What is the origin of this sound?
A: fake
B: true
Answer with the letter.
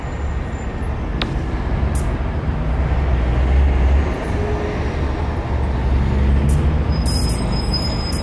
B